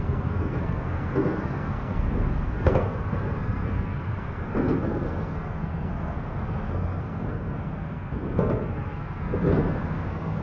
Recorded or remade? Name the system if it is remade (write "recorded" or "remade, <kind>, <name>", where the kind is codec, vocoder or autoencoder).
remade, codec, SNAC